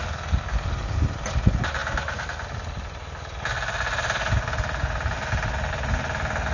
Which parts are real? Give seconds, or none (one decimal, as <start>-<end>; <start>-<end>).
0.0-6.5